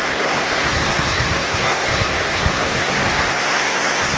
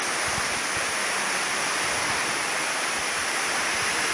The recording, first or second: second